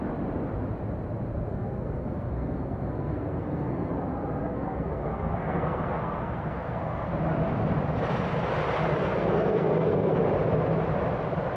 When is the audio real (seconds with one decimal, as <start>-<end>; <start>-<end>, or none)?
0.0-1.5; 3.9-4.4; 7.1-9.0; 10.2-11.6